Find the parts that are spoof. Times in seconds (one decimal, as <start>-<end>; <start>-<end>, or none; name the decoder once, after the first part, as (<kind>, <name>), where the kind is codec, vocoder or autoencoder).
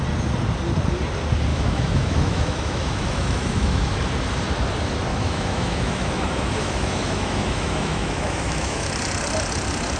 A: 1.5-4.0 (autoencoder, DAC-VAE); 5.1-8.9